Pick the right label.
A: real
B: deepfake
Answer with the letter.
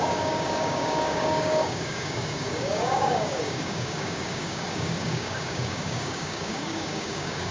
B